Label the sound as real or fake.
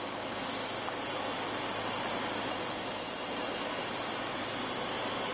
real